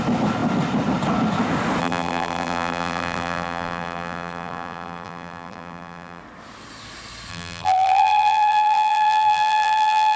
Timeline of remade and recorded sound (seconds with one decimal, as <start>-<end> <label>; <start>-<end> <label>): 0.0-1.8 recorded; 1.8-6.2 remade; 6.2-7.3 recorded; 7.3-10.2 remade